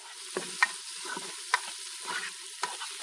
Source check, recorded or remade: recorded